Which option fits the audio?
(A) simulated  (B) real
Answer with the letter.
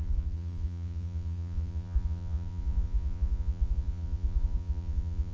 A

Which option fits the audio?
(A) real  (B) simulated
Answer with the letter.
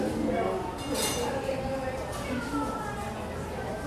A